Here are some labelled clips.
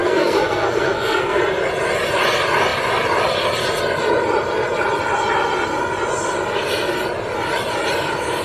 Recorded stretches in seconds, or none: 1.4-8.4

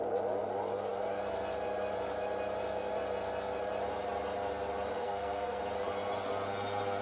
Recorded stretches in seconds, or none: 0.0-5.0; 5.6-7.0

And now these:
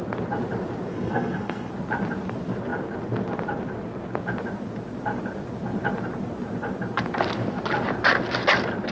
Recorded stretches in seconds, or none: 0.0-0.9; 1.7-8.9

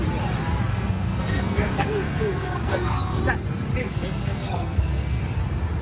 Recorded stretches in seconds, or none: 0.0-0.7; 3.2-3.8; 5.2-5.8